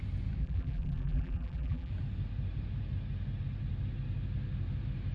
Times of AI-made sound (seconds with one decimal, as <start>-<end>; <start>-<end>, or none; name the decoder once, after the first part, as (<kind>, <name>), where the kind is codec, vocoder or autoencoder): 0.4-1.9 (vocoder, BigVGAN v2)